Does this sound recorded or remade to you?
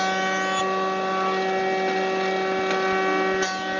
recorded